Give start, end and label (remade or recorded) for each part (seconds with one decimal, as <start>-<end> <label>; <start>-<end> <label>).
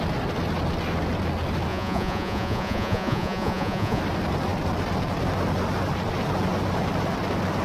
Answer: 0.0-1.7 recorded; 1.7-4.0 remade; 4.0-7.6 recorded